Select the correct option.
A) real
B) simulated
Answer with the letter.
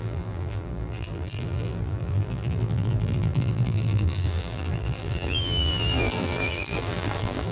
B